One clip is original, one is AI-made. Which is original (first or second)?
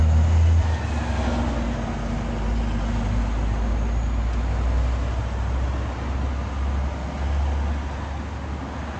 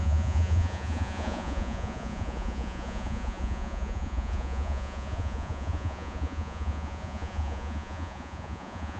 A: first